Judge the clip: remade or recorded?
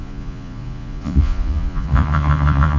remade